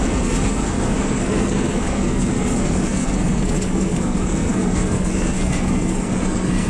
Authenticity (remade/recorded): remade